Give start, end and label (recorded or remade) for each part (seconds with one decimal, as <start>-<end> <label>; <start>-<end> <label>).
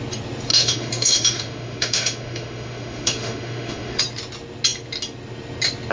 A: 0.0-0.5 recorded; 0.5-4.0 remade; 4.0-5.9 recorded